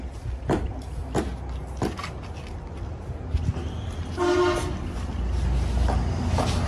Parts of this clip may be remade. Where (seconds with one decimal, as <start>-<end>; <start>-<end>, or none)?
none

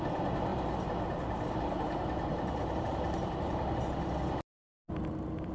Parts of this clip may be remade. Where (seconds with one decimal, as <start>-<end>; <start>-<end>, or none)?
0.5-3.8

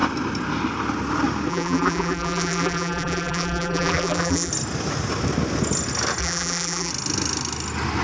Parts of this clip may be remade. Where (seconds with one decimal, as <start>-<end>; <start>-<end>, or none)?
1.5-4.5; 6.2-6.9

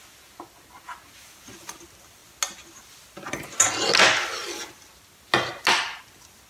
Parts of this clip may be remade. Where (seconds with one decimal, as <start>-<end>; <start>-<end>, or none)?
none